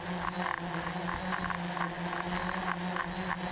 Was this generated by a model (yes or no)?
no